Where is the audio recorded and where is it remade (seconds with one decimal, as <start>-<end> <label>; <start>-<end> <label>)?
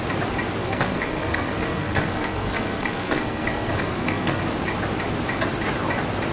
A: 0.0-0.6 recorded; 0.6-4.4 remade; 4.4-6.3 recorded